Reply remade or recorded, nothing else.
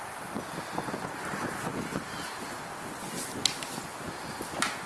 recorded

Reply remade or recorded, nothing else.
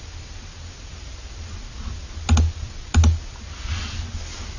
recorded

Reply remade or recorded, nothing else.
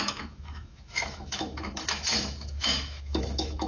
remade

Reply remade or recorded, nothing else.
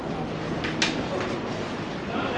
recorded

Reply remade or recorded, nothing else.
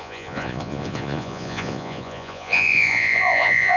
remade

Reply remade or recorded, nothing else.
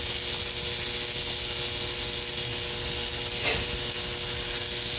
recorded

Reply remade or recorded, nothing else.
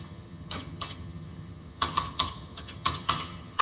remade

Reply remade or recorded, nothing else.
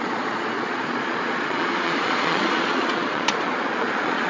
remade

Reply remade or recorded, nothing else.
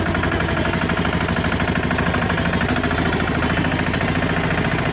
recorded